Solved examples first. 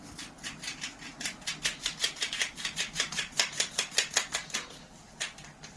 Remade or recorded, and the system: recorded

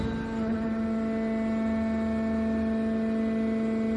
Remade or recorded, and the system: recorded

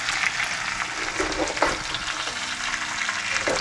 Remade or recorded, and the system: recorded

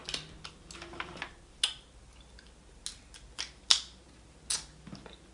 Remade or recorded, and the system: recorded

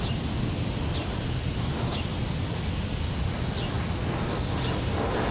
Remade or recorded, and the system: recorded